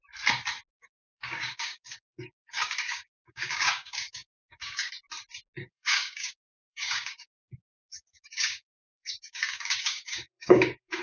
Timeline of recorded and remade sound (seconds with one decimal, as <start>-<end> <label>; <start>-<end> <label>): 0.0-0.7 recorded; 0.7-4.9 remade; 4.9-5.6 recorded; 5.6-11.0 remade